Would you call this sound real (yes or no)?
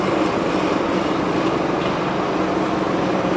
yes